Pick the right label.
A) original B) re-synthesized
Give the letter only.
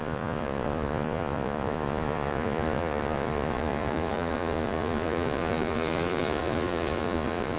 B